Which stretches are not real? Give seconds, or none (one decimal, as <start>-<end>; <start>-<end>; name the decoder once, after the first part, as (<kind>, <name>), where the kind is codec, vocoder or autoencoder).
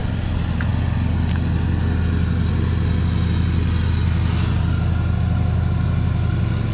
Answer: none